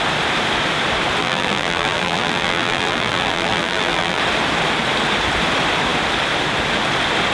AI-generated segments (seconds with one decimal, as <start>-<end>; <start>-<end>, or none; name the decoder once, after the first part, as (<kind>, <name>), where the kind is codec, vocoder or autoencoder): 1.2-4.2 (vocoder, BigVGAN v2)

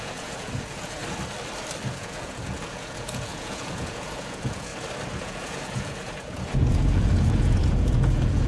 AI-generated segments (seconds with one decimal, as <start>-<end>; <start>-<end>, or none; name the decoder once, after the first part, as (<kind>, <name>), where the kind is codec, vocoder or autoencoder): 0.0-1.0 (vocoder, Vocos); 1.9-4.7; 5.2-8.5

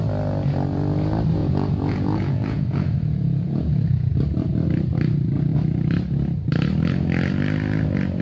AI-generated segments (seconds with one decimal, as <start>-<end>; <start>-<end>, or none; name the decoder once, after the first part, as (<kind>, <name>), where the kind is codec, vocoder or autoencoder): 1.4-4.1 (vocoder, Vocos)

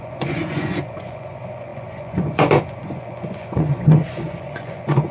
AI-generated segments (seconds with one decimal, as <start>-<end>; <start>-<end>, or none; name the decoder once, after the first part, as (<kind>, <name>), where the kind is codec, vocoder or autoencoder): 0.0-5.1 (vocoder, Vocos)

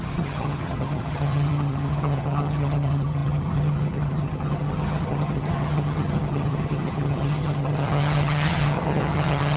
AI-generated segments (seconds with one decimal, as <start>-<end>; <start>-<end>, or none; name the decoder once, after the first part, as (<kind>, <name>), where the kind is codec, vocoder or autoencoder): 0.0-9.6 (vocoder, HiFi-GAN)

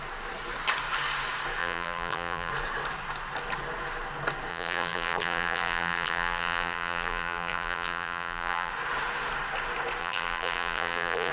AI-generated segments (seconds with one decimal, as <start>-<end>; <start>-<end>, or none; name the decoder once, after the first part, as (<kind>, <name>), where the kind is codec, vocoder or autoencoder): 1.6-2.5 (vocoder, BigVGAN v2); 4.5-8.7; 10.0-11.3

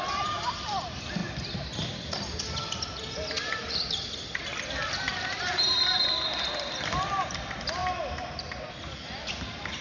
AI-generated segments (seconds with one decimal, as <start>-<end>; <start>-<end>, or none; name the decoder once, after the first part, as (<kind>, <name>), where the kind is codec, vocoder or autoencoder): 0.0-7.8 (vocoder, BigVGAN v2); 8.7-9.8

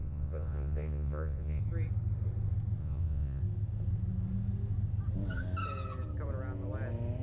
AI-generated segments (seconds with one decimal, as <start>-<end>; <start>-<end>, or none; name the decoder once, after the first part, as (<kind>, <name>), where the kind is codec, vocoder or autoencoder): 0.0-1.6 (vocoder, Vocos); 2.8-3.4